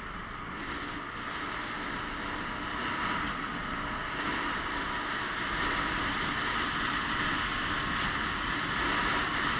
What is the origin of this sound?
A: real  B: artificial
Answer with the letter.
A